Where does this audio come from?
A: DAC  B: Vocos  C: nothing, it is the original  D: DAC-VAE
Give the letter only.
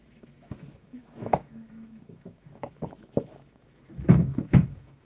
D